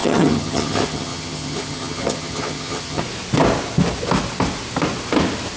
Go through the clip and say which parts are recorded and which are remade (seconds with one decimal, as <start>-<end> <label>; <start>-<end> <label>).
0.0-3.0 remade; 3.0-5.6 recorded